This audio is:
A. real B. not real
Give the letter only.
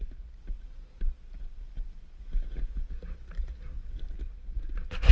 A